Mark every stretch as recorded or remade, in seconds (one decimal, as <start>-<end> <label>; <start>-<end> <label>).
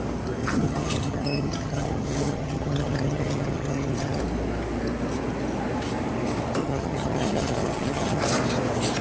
0.0-0.4 recorded; 0.4-4.2 remade; 4.2-6.6 recorded; 6.6-8.2 remade; 8.2-9.0 recorded